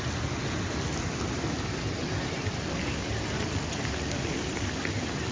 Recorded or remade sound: recorded